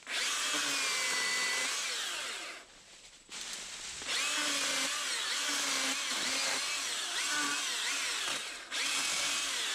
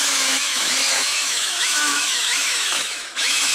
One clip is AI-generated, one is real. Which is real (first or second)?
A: first